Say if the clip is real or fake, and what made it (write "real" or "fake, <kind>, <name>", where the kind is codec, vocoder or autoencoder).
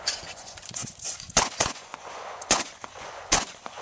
fake, vocoder, Vocos